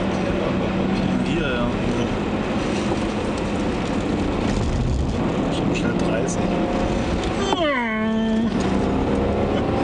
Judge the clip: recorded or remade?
recorded